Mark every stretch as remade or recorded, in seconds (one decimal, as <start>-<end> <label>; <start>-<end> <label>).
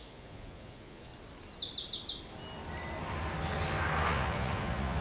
0.0-1.1 remade; 1.1-4.1 recorded; 4.1-5.0 remade